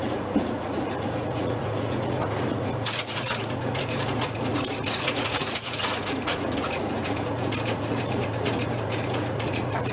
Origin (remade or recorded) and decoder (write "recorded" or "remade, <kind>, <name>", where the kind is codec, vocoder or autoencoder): remade, vocoder, Vocos